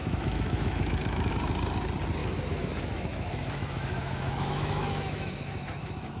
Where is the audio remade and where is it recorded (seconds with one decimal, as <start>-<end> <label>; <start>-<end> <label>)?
0.0-1.3 remade; 1.3-2.2 recorded; 2.2-6.2 remade